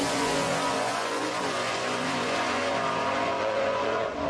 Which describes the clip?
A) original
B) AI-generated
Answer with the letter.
B